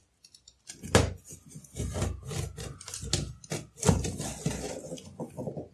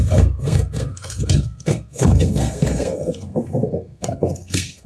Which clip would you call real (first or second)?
first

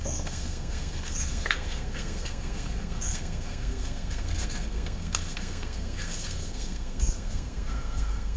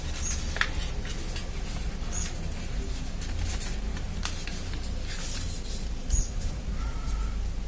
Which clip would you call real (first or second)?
second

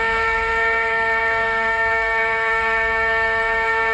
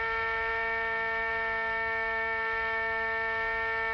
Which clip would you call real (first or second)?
second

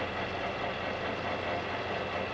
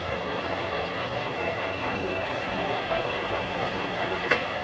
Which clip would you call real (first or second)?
first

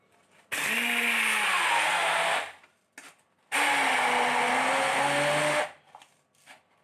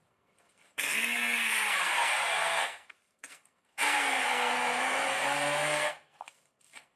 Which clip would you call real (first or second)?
first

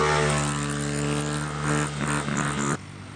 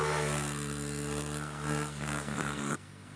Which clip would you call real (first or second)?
first